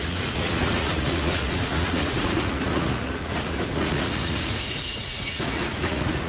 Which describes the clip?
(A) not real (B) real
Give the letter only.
A